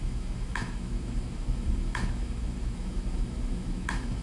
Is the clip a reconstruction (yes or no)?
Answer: yes